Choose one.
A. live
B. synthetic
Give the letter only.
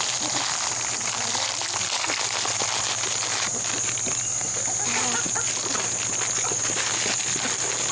A